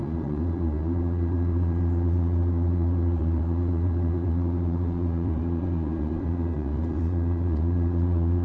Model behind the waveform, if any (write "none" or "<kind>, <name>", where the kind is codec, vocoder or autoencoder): vocoder, Vocos